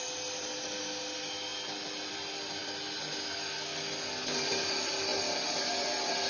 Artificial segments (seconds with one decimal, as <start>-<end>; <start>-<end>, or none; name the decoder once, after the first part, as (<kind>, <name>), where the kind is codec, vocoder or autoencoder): none